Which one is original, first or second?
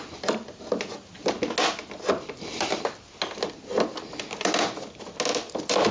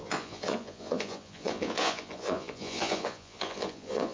first